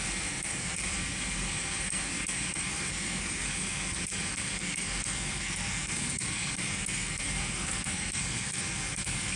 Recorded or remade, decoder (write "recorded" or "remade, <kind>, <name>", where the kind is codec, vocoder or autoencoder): remade, codec, SNAC